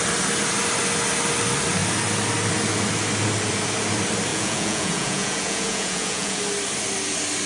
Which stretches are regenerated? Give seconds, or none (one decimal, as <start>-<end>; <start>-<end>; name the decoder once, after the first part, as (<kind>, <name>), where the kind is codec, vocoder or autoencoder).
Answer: 4.3-6.4 (vocoder, Vocos)